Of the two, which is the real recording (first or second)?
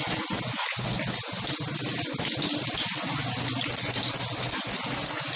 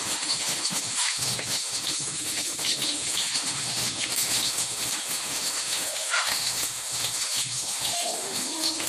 first